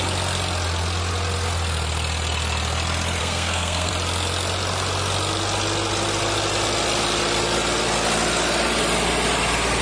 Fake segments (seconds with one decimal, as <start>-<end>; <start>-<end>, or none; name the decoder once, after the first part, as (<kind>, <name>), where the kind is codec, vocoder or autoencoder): 3.2-3.9 (codec, SNAC)